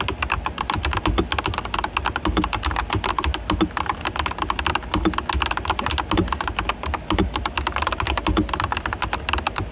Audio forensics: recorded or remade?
recorded